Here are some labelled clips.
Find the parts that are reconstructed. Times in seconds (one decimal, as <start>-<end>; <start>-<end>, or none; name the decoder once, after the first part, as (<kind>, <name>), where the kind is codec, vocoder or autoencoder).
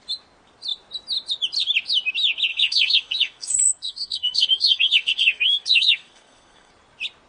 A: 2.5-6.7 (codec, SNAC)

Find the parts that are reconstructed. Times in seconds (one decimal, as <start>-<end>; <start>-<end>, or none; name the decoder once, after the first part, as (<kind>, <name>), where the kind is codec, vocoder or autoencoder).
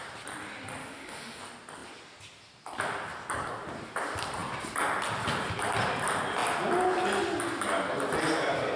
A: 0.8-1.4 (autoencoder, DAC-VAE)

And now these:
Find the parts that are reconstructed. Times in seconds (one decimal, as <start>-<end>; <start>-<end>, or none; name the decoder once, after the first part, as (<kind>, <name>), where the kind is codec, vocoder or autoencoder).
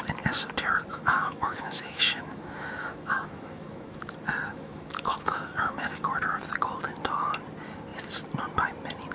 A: 0.9-4.0 (autoencoder, DAC-VAE); 4.5-6.0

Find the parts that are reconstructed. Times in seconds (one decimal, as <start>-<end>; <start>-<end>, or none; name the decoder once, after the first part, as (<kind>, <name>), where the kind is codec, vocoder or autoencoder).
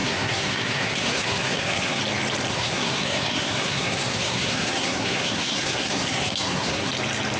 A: 0.0-2.0 (codec, SNAC); 2.5-6.9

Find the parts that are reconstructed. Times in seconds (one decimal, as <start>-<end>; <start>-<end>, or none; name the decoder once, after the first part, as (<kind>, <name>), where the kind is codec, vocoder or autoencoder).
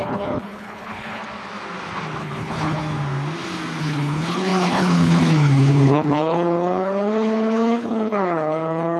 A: 0.0-1.2 (codec, HILCodec); 2.2-2.8; 3.8-9.0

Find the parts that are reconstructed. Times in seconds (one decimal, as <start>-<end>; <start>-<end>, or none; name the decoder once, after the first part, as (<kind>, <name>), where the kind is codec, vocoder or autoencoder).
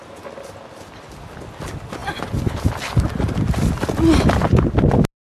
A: none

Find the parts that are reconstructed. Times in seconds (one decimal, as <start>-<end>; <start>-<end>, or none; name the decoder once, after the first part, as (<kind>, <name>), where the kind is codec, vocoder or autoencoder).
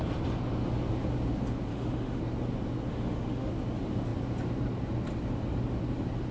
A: 1.7-2.2 (autoencoder, DAC-VAE); 2.9-3.5